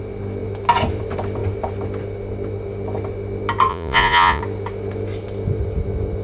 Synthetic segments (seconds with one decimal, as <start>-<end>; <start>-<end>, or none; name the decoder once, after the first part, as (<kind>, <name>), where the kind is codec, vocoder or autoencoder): 3.7-4.4 (vocoder, Vocos)